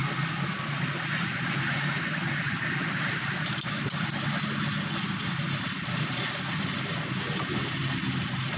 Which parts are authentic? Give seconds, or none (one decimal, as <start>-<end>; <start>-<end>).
0.0-8.6